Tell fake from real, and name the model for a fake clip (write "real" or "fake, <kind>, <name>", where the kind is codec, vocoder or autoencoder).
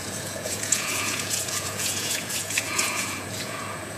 fake, vocoder, Vocos